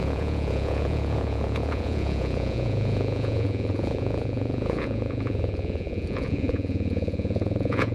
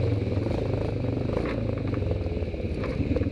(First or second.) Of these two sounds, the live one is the second